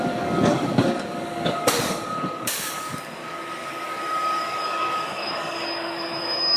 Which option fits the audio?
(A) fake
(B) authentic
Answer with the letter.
A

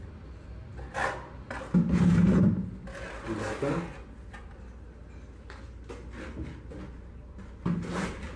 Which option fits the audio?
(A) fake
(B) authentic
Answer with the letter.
B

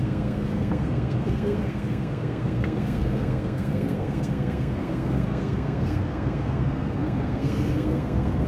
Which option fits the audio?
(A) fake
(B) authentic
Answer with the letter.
A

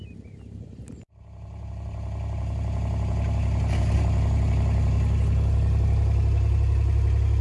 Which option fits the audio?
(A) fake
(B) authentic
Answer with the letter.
B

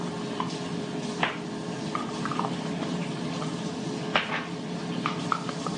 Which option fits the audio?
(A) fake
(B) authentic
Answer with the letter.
B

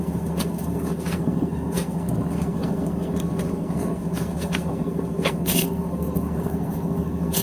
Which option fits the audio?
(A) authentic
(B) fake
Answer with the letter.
B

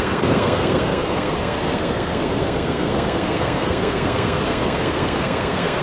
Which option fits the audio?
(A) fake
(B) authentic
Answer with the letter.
A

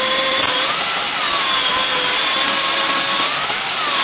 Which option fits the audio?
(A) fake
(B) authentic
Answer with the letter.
B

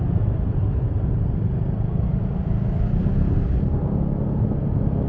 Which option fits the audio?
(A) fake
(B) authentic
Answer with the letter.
B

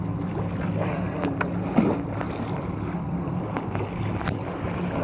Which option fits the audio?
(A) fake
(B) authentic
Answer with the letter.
B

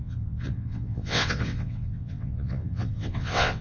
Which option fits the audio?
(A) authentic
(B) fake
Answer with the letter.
B